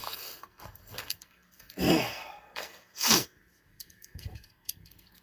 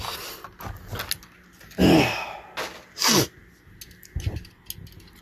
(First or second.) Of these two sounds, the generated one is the first